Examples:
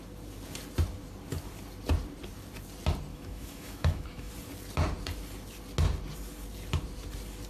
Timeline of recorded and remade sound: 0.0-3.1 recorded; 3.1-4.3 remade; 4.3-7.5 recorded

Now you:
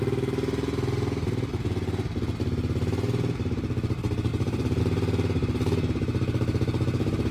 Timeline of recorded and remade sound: 0.0-4.3 recorded; 4.3-4.8 remade; 4.8-7.3 recorded

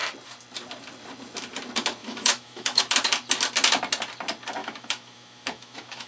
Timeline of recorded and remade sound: 0.0-2.0 recorded; 2.0-2.8 remade; 2.8-4.6 recorded; 4.6-6.1 remade